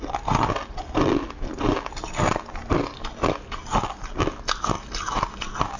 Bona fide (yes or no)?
yes